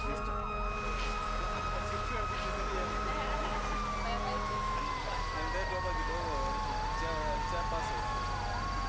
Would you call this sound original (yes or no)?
yes